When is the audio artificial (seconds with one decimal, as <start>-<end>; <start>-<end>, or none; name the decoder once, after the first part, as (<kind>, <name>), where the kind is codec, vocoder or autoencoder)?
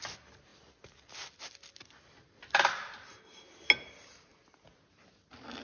none